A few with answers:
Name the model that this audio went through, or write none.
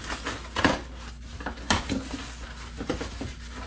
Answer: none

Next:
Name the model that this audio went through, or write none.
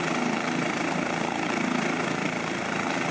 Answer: none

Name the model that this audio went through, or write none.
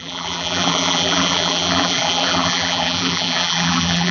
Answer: vocoder, BigVGAN v2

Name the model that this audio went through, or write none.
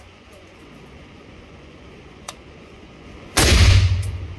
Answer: vocoder, Vocos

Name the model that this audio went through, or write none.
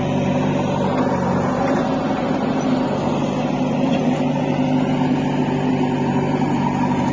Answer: none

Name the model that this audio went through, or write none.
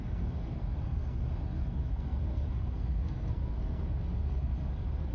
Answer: codec, SNAC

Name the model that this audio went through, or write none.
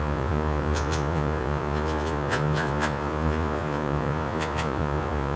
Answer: vocoder, Vocos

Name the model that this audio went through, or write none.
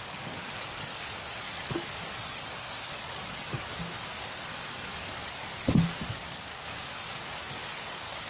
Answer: codec, DAC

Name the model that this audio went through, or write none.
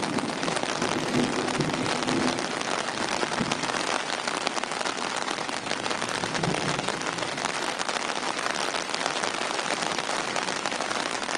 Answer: none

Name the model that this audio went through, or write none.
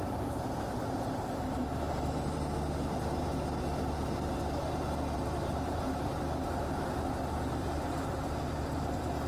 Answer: vocoder, BigVGAN v2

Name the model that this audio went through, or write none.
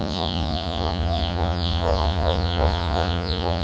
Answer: vocoder, Vocos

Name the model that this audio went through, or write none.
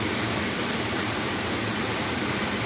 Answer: none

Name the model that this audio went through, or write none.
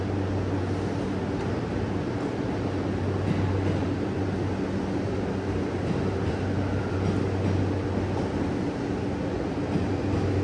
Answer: none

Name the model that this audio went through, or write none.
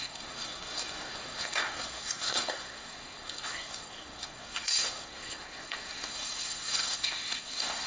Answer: codec, SNAC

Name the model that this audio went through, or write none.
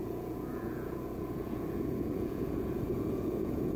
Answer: vocoder, Vocos